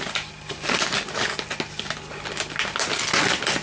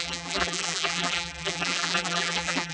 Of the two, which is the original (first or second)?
first